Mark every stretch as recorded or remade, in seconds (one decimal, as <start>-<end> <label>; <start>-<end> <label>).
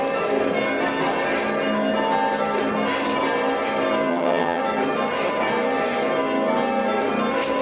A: 0.0-4.1 recorded; 4.1-4.6 remade; 4.6-7.6 recorded